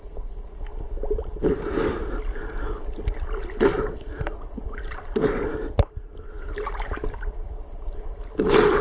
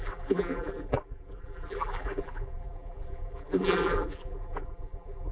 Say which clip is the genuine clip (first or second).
first